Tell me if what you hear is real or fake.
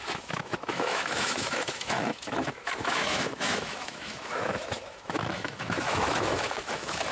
fake